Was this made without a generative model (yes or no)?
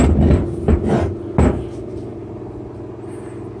yes